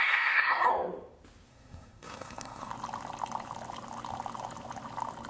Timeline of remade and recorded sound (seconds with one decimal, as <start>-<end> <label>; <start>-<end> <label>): 0.0-0.7 remade; 0.7-1.5 recorded; 1.5-2.7 remade; 2.7-5.3 recorded